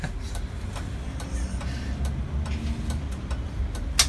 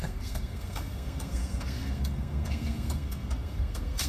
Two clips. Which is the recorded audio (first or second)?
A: first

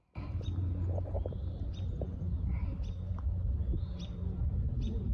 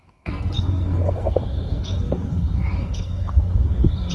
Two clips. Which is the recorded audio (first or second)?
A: first